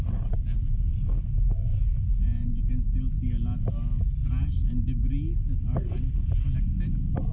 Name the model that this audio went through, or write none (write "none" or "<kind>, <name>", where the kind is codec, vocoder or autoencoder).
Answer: none